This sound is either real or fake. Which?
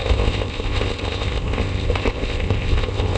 fake